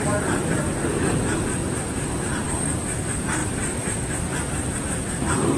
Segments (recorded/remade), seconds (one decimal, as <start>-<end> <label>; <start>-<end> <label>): 0.0-1.6 recorded; 1.6-2.5 remade; 2.5-3.4 recorded; 3.4-4.8 remade; 4.8-5.6 recorded